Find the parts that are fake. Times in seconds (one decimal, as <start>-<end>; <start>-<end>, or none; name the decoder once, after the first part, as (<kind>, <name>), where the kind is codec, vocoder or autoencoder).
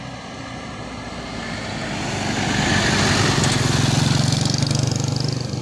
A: none